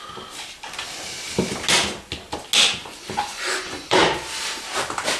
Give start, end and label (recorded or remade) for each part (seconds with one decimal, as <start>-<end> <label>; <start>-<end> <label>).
0.0-2.8 recorded; 2.8-4.0 remade; 4.0-5.2 recorded